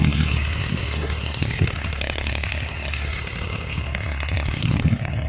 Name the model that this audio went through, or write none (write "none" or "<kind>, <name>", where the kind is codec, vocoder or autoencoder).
codec, SNAC